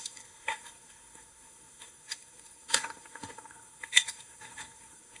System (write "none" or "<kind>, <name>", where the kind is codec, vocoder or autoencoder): codec, SNAC